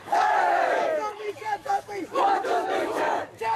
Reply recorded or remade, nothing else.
remade